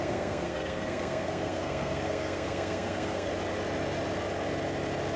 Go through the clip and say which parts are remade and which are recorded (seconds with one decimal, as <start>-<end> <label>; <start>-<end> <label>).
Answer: 0.0-3.3 remade; 3.3-5.2 recorded